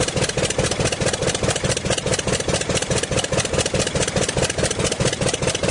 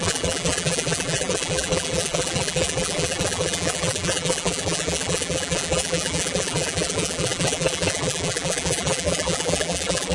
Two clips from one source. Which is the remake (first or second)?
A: second